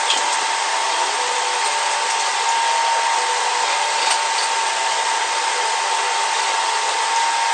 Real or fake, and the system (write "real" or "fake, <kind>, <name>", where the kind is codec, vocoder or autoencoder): real